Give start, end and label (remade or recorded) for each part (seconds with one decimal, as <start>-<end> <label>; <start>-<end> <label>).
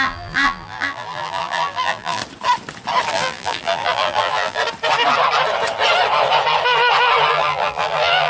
0.0-2.2 remade; 2.2-3.1 recorded; 3.1-4.6 remade; 4.6-7.3 recorded; 7.3-8.3 remade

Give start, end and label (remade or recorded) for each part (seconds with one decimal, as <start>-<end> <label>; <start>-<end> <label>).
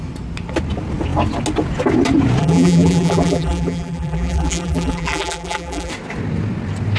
0.0-2.4 recorded; 2.4-5.9 remade; 5.9-7.0 recorded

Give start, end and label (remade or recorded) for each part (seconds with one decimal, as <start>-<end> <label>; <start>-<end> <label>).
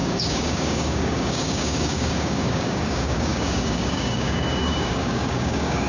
0.0-5.9 remade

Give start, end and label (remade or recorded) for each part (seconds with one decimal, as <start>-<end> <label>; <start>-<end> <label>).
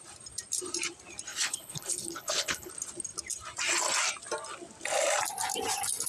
0.0-1.3 recorded; 1.3-2.7 remade; 2.7-6.1 recorded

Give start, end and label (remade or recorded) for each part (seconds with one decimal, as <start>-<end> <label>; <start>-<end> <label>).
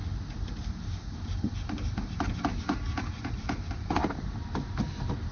0.0-5.3 recorded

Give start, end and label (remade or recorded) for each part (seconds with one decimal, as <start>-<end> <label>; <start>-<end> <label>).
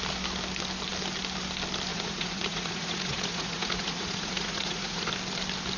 0.0-1.9 recorded; 1.9-5.1 remade; 5.1-5.8 recorded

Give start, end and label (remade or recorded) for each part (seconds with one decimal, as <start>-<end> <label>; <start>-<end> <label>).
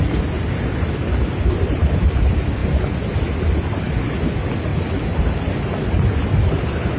0.0-7.0 recorded